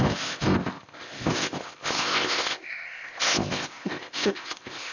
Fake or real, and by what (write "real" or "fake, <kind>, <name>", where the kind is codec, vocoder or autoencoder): fake, codec, ZipCodec